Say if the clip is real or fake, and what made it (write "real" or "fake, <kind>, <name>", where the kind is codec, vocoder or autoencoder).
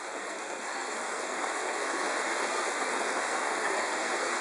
fake, codec, SNAC